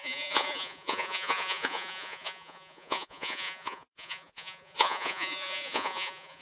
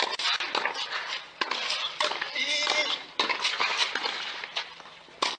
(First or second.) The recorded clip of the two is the second